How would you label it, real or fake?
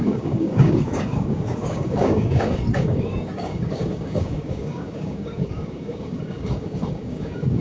fake